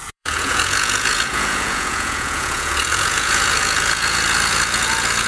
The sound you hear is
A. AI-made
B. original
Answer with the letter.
A